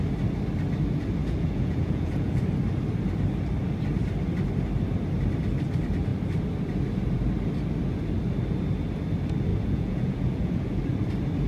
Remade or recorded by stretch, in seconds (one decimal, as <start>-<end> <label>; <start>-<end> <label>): 0.0-1.2 recorded; 1.2-2.4 remade; 2.4-9.5 recorded; 9.5-10.8 remade; 10.8-11.5 recorded